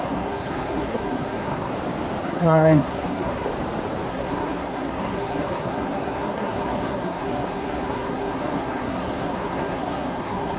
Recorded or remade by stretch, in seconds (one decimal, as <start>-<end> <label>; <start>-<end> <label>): 0.0-1.7 remade; 1.7-2.2 recorded; 2.2-3.5 remade; 3.5-4.1 recorded; 4.1-10.6 remade